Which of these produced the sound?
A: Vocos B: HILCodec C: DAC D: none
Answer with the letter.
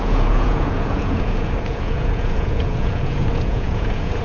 A